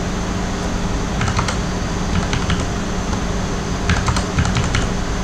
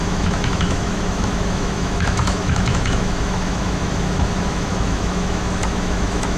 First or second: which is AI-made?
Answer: second